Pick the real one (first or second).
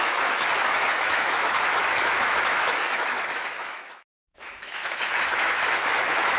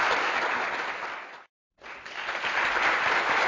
second